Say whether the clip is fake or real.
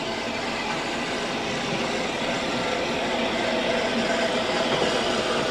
real